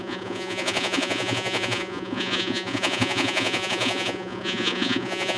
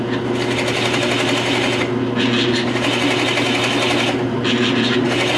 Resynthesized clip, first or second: first